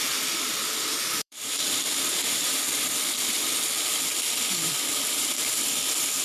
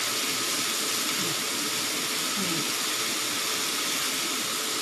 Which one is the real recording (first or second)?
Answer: second